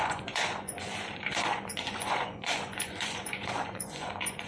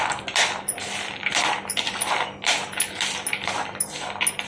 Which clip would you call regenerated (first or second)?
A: first